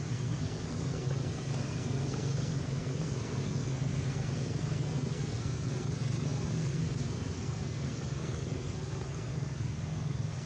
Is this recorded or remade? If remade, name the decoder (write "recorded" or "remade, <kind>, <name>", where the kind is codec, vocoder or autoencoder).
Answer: remade, codec, SNAC